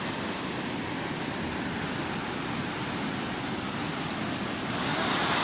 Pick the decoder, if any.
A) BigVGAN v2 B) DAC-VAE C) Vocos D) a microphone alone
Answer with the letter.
D